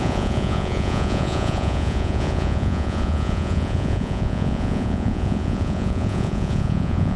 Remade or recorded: remade